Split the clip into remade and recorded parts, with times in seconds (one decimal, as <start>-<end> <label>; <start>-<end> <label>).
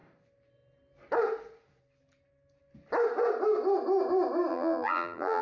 0.0-4.5 recorded; 4.5-5.4 remade